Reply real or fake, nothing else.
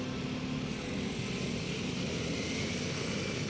real